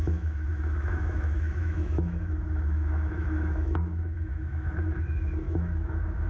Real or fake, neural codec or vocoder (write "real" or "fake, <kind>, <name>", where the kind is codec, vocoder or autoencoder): fake, autoencoder, DAC-VAE